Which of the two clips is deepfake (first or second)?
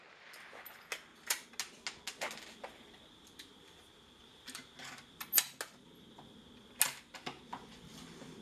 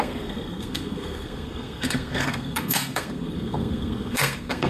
second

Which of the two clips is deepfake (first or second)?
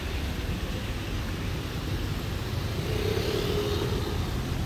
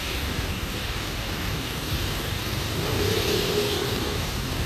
second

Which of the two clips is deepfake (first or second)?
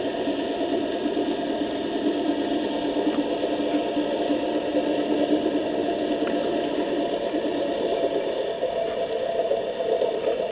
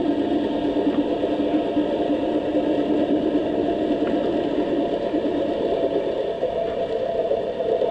second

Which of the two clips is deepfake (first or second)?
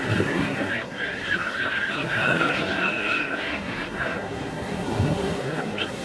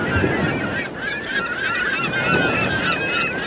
first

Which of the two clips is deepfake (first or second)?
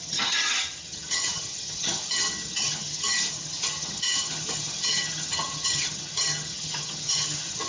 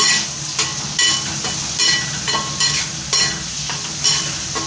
first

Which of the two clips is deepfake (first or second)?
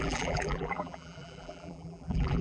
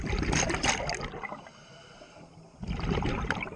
first